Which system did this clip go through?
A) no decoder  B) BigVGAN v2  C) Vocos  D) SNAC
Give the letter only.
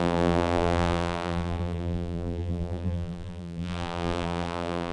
B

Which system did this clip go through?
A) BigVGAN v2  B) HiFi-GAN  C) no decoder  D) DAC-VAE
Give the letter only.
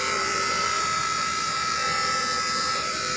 A